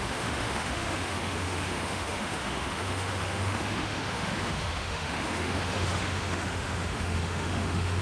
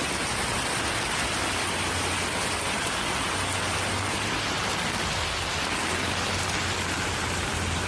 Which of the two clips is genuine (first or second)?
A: second